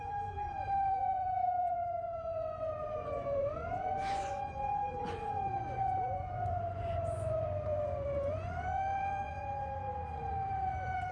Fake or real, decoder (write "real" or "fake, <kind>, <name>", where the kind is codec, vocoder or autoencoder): fake, vocoder, Vocos